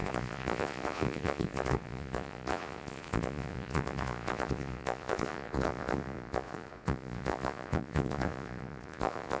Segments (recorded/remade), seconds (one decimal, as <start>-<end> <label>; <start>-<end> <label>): 0.0-9.4 remade